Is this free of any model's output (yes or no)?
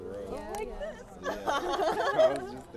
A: yes